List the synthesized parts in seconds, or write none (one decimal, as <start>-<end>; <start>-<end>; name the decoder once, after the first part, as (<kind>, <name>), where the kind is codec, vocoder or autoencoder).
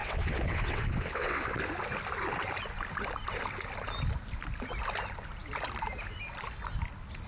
0.0-1.6 (vocoder, WaveNeXt)